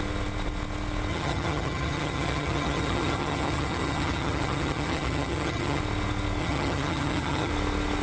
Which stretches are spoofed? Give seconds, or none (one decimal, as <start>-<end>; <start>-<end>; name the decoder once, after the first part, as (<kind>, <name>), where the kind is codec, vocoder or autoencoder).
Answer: 1.1-5.8 (vocoder, HiFi-GAN); 6.4-7.5